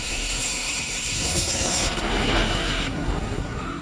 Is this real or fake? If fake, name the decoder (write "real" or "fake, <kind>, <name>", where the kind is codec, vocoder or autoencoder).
fake, codec, SNAC